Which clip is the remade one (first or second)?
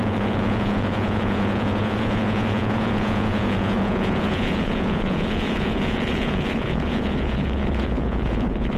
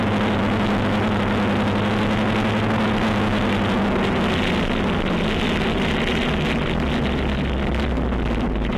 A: first